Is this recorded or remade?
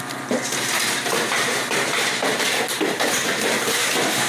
remade